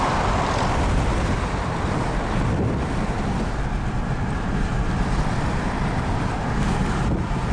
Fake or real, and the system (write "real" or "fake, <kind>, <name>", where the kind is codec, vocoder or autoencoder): real